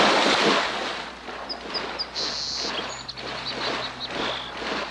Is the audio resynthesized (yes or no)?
no